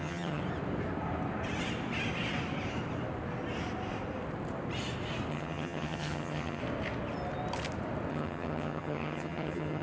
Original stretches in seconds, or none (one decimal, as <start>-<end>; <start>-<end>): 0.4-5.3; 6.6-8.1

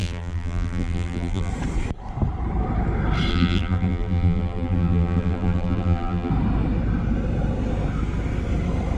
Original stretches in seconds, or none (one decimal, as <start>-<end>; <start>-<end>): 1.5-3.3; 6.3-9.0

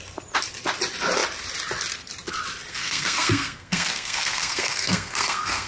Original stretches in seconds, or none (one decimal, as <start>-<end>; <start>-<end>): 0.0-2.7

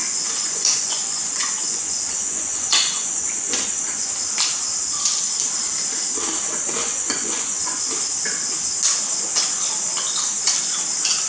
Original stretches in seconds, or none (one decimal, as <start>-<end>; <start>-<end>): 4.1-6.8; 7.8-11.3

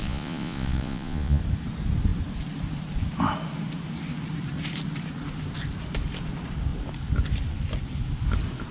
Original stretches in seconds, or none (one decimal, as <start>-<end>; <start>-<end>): 1.4-8.7